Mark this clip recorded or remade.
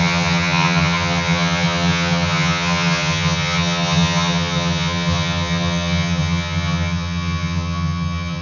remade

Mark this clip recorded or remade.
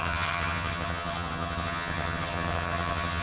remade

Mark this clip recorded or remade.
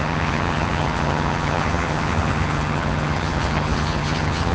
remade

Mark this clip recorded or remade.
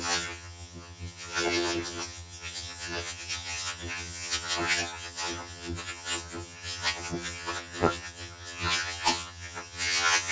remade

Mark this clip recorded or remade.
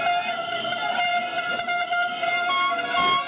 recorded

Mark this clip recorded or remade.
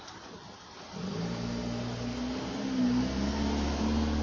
recorded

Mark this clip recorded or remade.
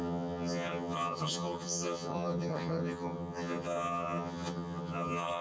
remade